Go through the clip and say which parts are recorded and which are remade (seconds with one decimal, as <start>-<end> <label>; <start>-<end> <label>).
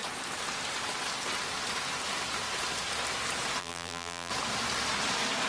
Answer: 0.0-3.6 recorded; 3.6-4.3 remade; 4.3-5.5 recorded